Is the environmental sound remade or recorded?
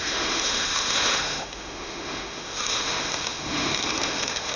remade